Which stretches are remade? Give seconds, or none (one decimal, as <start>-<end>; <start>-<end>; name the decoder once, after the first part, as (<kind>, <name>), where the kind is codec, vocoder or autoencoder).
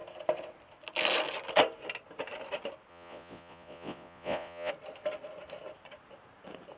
2.9-4.7 (vocoder, Vocos)